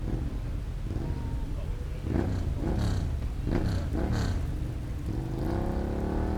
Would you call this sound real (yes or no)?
yes